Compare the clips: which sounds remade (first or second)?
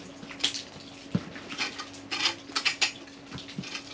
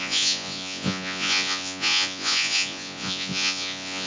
second